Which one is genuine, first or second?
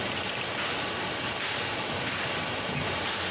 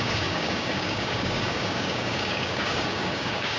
first